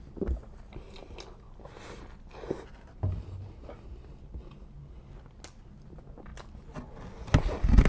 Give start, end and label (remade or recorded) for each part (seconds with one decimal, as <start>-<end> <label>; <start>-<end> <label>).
0.0-7.9 recorded